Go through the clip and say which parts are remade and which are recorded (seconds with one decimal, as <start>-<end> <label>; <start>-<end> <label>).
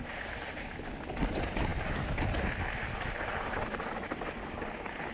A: 0.0-5.1 recorded